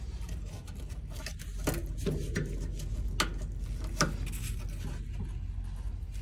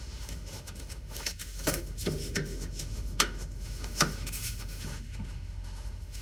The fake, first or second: second